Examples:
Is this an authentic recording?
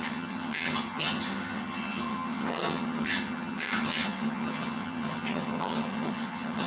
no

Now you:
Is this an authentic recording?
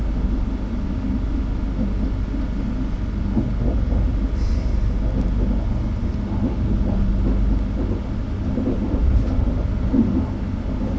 yes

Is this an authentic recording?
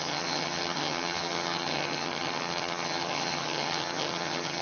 no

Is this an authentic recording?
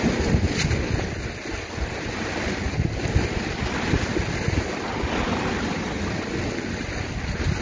yes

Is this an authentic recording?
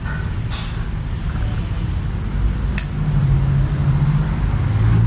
yes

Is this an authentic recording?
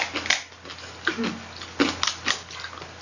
yes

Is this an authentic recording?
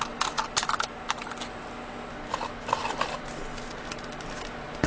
yes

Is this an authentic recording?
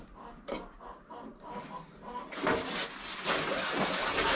yes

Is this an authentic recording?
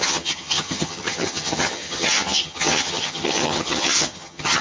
no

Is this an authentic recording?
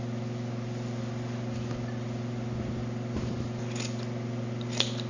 yes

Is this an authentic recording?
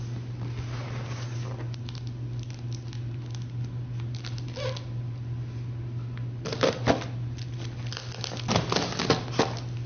yes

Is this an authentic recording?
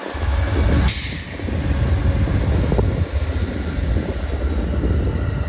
yes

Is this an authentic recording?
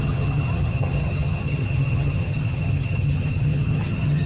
no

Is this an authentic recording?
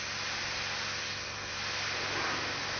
yes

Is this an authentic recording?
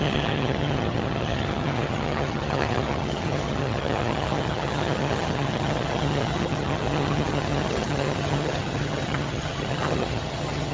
no